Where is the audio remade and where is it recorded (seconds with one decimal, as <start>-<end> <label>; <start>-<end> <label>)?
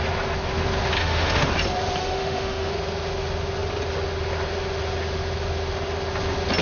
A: 0.0-1.0 recorded; 1.0-1.5 remade; 1.5-2.0 recorded; 2.0-2.7 remade; 2.7-6.6 recorded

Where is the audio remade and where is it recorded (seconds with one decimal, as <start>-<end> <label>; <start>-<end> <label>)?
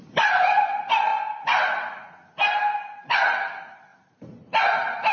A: 0.0-3.9 recorded; 3.9-4.6 remade; 4.6-5.1 recorded